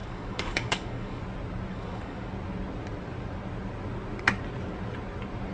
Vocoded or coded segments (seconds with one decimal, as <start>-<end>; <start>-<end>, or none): 0.0-1.2; 1.7-2.3